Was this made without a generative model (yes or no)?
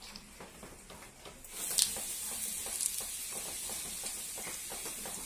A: yes